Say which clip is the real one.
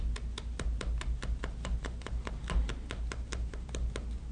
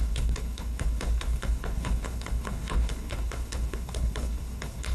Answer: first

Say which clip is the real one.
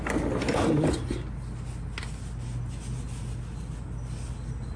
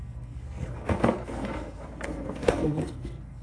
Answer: first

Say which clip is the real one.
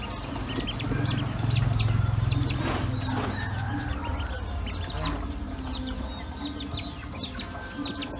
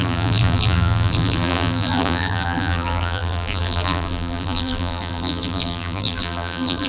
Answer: first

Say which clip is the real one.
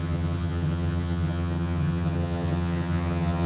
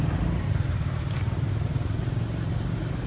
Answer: second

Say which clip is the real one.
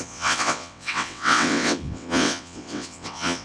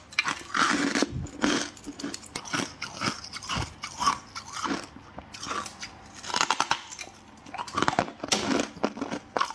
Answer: second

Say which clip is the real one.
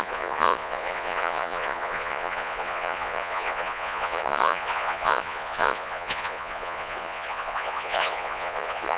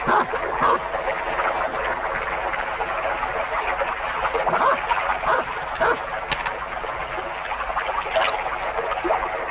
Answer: second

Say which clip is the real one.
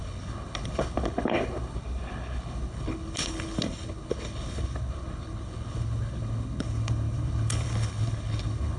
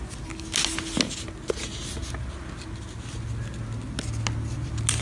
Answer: second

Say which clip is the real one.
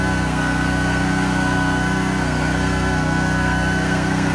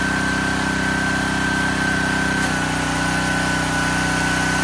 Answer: second